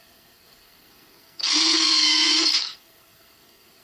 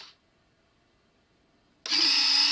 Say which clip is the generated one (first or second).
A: first